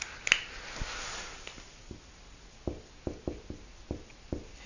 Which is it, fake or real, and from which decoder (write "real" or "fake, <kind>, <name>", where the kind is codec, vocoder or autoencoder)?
real